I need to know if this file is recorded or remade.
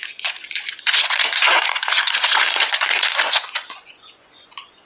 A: remade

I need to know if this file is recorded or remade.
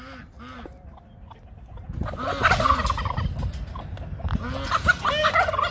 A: recorded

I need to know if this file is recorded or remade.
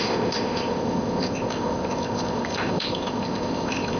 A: remade